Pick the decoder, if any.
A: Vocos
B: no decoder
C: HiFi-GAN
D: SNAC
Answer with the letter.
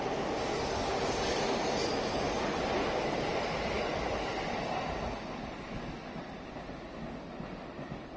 B